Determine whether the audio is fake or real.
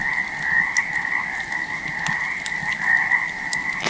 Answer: real